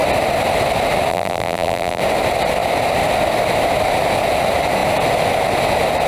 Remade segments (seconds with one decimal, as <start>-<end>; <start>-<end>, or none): 1.1-2.0